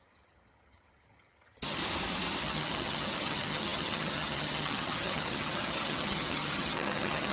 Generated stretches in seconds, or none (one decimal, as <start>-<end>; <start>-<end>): 0.0-1.8; 2.4-7.3